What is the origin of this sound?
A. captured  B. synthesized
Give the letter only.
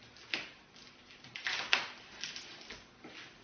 A